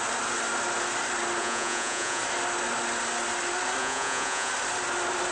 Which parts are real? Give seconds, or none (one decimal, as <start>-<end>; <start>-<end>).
0.0-1.4; 2.2-3.8; 4.5-5.3